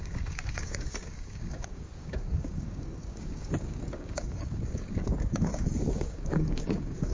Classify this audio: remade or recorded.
remade